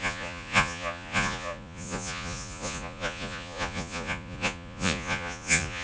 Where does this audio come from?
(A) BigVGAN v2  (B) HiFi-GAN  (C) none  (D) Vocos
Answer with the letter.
D